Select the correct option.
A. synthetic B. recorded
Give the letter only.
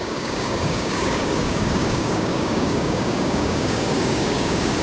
A